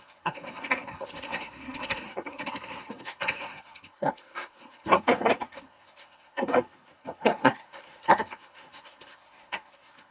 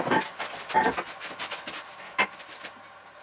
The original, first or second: second